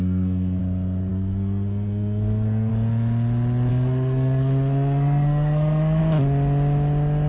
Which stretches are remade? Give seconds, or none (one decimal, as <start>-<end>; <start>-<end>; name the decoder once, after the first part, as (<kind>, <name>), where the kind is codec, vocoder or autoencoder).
0.0-0.6 (codec, SNAC); 1.1-2.7; 3.7-6.0